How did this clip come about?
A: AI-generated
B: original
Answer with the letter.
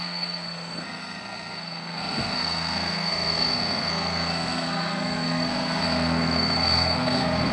A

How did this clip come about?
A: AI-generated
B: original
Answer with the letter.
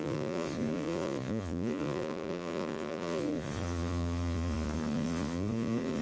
A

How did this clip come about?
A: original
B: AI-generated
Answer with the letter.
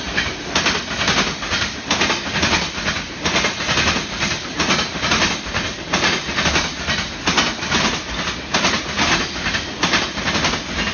A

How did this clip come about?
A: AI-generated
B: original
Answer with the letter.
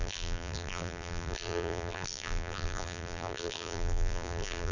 A